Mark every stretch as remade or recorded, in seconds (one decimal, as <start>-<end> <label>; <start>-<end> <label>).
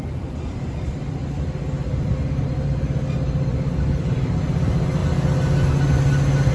0.0-1.2 remade; 1.2-4.2 recorded; 4.2-5.0 remade; 5.0-6.5 recorded